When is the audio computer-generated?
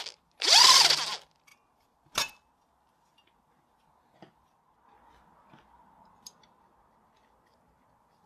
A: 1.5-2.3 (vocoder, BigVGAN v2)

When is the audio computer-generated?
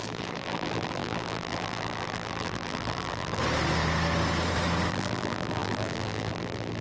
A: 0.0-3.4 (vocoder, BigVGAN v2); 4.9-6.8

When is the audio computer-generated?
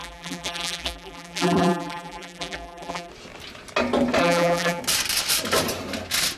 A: 0.0-3.1 (vocoder, BigVGAN v2); 4.2-4.8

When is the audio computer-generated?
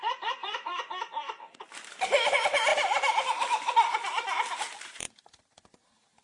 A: 0.0-6.2 (vocoder, BigVGAN v2)